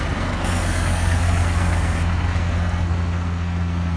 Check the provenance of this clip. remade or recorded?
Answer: remade